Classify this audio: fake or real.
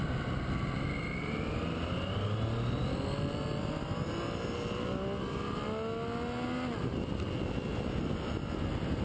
real